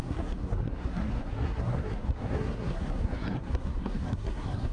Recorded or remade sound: remade